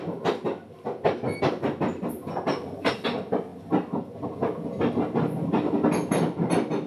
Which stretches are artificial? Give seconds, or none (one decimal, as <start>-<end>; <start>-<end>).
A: 1.9-2.9